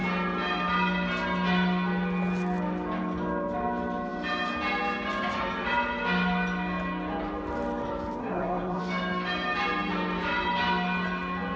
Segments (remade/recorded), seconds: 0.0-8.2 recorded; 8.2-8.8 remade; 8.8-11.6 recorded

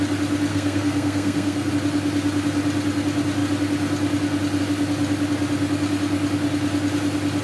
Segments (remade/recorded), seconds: 0.0-0.5 recorded; 0.5-1.7 remade; 1.7-7.4 recorded

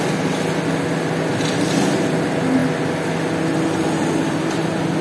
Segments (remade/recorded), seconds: 0.0-5.0 recorded

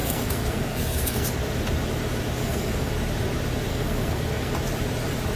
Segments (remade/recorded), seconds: 0.0-1.3 remade; 1.3-2.4 recorded; 2.4-2.9 remade; 2.9-3.7 recorded; 3.7-4.5 remade; 4.5-5.4 recorded

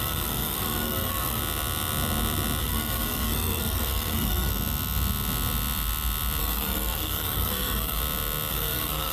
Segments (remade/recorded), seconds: 0.0-1.4 remade; 1.4-2.6 recorded; 2.6-4.5 remade; 4.5-6.4 recorded; 6.4-8.0 remade; 8.0-8.5 recorded; 8.5-9.1 remade

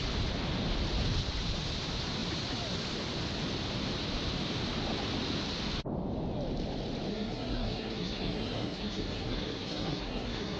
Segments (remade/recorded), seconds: 0.0-7.1 recorded; 7.1-10.6 remade

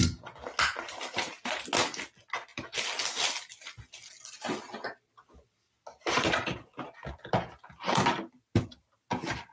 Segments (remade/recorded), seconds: 0.0-9.5 recorded

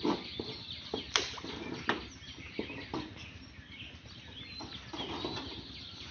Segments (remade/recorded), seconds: 0.0-6.1 recorded